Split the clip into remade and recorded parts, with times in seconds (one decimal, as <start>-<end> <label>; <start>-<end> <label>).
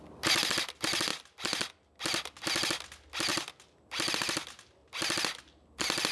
0.0-6.1 recorded